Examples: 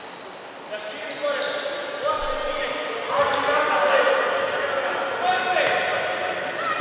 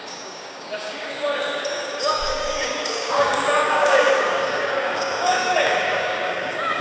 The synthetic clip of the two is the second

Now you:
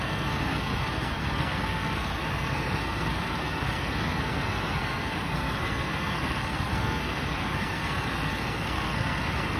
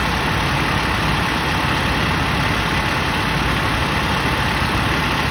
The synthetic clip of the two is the first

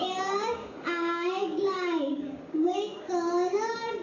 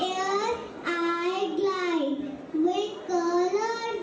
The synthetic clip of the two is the first